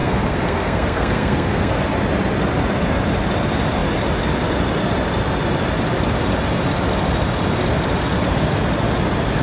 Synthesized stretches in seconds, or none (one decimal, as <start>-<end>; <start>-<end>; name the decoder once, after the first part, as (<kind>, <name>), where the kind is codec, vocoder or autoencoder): 0.0-1.7 (codec, SNAC)